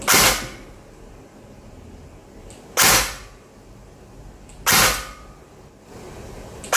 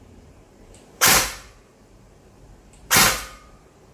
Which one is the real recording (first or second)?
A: first